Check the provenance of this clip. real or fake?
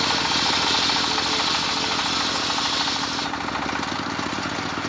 real